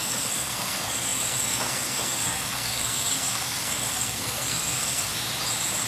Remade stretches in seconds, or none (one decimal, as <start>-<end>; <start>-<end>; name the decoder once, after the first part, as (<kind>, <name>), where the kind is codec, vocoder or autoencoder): 0.0-5.1 (codec, SNAC)